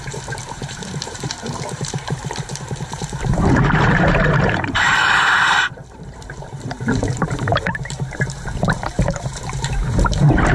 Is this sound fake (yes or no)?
yes